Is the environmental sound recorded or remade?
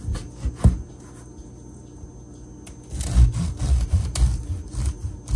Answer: recorded